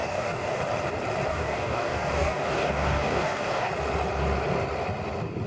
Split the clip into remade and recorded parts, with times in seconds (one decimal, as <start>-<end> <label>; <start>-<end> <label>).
0.0-0.6 remade; 0.6-1.3 recorded; 1.3-3.7 remade; 3.7-5.5 recorded